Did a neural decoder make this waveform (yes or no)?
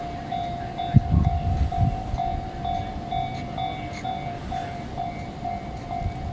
no